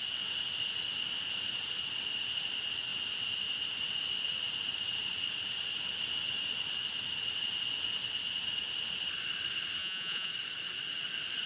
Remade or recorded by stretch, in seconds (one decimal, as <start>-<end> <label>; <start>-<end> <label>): 0.0-9.8 recorded; 9.8-10.3 remade; 10.3-11.5 recorded